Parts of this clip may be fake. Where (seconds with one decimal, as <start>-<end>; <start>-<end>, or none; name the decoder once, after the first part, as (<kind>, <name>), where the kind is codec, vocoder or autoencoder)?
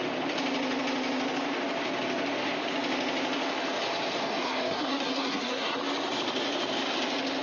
4.3-5.8 (codec, SNAC)